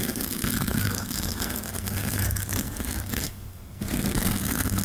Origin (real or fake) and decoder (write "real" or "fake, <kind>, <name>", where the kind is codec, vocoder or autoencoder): fake, codec, SNAC